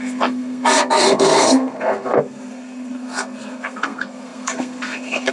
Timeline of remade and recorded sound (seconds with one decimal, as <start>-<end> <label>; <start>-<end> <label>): 0.0-5.3 remade